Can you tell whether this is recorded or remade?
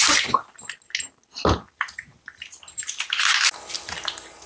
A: recorded